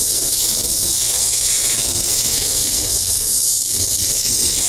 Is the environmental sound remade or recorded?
remade